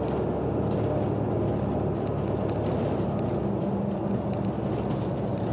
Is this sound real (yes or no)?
yes